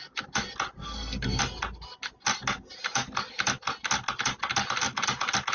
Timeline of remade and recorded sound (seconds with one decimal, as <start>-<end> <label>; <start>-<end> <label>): 0.0-0.8 recorded; 0.8-1.4 remade; 1.4-5.5 recorded